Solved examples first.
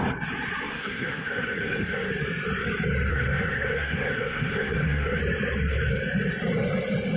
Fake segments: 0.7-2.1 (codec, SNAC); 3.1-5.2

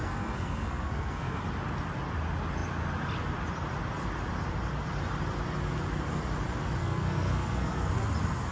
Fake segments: 0.0-1.4 (codec, SNAC); 6.8-7.9

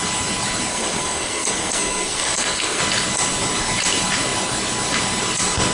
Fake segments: 0.7-2.8 (codec, SNAC)

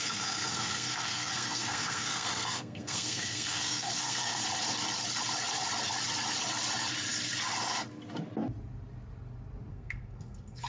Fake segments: 0.0-4.4 (codec, SNAC); 9.7-10.7

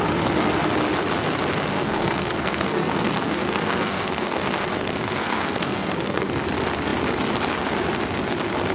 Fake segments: 1.7-6.3 (codec, SNAC)

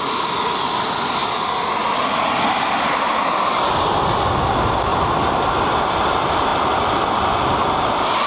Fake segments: none

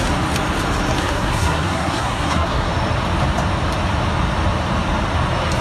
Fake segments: 1.0-2.7 (codec, SNAC)

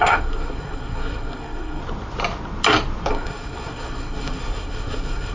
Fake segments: 0.0-1.8 (codec, SNAC); 3.1-5.3